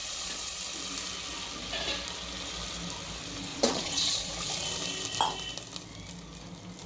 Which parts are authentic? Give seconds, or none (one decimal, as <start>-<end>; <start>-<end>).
0.6-3.5; 4.3-6.9